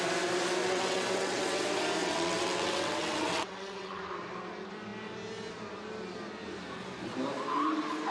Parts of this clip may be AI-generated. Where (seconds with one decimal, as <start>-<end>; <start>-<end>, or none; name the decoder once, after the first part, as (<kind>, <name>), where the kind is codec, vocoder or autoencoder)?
0.6-1.6 (vocoder, WaveNeXt); 2.0-4.0

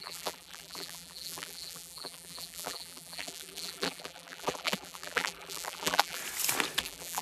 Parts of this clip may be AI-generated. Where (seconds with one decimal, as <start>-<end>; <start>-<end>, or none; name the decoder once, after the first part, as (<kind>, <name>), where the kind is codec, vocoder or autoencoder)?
0.0-6.2 (vocoder, BigVGAN v2); 6.8-7.2